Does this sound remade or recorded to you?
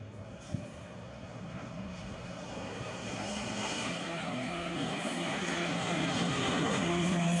remade